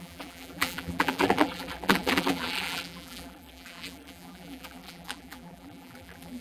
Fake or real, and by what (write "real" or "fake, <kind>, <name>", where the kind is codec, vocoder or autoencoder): fake, vocoder, BigVGAN v2